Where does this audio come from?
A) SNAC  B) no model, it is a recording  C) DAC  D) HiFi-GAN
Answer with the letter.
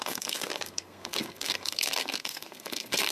A